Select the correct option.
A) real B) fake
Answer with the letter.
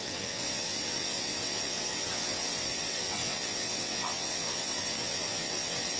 B